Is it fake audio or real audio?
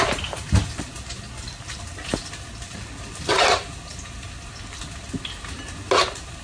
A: real